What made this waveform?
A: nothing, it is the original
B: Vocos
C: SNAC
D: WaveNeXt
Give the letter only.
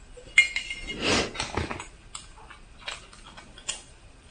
A